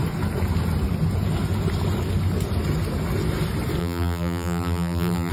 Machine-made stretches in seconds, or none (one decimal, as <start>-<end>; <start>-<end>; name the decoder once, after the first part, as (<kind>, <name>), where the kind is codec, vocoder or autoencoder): 3.8-5.3 (vocoder, BigVGAN v2)